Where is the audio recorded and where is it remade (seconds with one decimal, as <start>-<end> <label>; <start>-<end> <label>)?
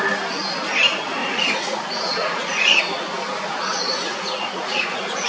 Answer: 0.0-1.2 recorded; 1.2-2.8 remade; 2.8-3.7 recorded; 3.7-5.3 remade